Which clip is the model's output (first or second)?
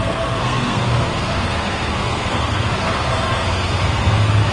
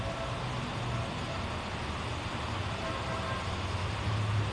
first